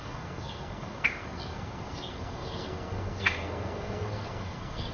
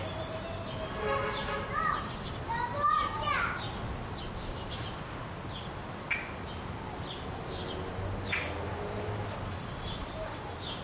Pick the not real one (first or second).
first